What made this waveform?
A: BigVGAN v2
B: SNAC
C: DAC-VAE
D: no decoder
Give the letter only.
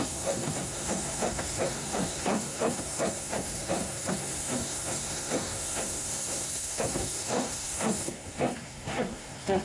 B